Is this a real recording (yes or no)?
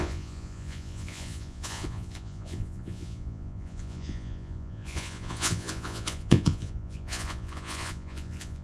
no